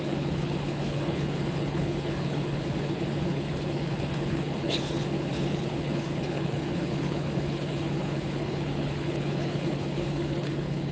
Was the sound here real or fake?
fake